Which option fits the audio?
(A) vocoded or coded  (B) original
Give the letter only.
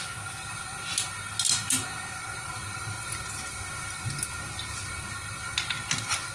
B